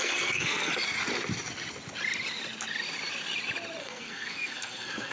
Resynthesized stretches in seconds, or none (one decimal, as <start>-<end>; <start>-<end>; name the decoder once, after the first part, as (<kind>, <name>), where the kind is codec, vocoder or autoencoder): 0.0-0.7 (codec, SNAC); 3.8-5.1